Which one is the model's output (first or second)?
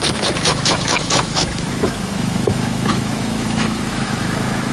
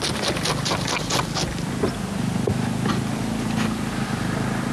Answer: first